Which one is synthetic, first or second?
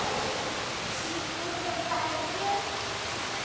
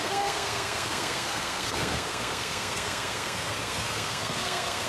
second